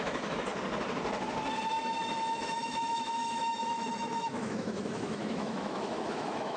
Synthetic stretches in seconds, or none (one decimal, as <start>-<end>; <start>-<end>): 0.0-0.5; 1.7-6.6